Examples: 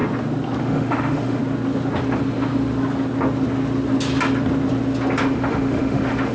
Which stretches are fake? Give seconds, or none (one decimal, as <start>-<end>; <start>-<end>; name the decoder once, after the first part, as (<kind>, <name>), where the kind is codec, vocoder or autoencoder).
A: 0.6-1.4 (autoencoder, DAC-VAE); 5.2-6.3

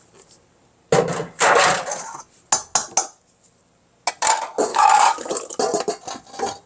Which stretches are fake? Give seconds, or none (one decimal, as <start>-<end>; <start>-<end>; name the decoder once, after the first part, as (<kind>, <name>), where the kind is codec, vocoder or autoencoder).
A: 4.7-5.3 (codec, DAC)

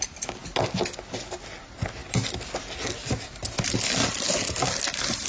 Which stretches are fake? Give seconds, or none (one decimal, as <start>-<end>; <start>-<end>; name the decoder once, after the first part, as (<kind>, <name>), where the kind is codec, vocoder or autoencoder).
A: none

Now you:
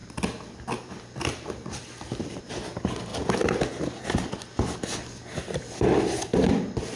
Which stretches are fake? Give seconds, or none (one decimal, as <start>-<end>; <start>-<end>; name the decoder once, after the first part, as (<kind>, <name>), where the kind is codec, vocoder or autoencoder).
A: 0.0-2.4 (vocoder, BigVGAN v2); 5.4-6.6

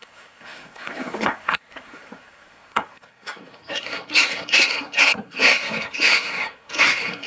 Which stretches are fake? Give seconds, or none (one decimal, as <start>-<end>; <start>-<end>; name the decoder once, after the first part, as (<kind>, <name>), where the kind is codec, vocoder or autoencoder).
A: 0.0-7.3 (codec, SNAC)

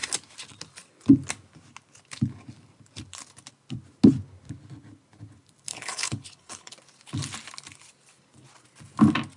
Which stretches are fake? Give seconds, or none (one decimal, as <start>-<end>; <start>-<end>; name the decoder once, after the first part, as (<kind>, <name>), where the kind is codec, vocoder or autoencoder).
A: 5.7-6.7 (codec, HILCodec)

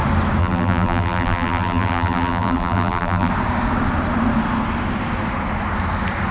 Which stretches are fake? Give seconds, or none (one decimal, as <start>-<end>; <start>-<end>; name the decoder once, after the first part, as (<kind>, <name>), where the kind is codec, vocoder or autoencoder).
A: 0.4-3.3 (vocoder, BigVGAN v2)